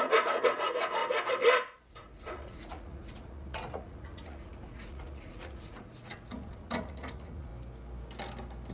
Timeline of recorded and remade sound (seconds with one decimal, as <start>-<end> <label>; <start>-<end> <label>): 0.0-1.0 remade; 1.0-1.9 recorded; 1.9-7.5 remade; 7.5-8.7 recorded

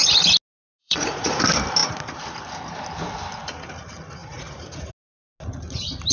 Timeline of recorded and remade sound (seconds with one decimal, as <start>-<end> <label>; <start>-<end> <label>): 0.0-0.8 recorded; 0.8-1.4 remade; 1.4-4.2 recorded; 4.2-4.9 remade; 4.9-6.1 recorded

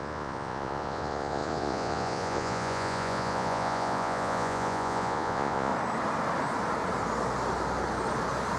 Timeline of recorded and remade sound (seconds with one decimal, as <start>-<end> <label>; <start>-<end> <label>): 0.0-5.7 remade; 5.7-8.6 recorded

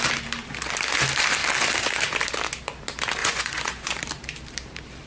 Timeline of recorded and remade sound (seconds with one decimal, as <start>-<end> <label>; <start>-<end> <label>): 0.0-3.2 recorded; 3.2-4.0 remade; 4.0-5.1 recorded

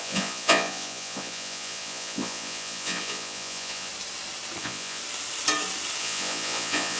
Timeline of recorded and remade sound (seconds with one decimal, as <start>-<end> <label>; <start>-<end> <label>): 0.0-3.9 remade; 3.9-4.6 recorded; 4.6-5.0 remade; 5.0-6.0 recorded; 6.0-7.0 remade

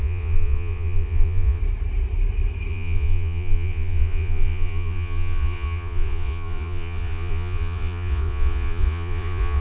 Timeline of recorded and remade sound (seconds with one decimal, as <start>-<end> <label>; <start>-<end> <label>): 0.0-1.6 remade; 1.6-2.7 recorded; 2.7-9.6 remade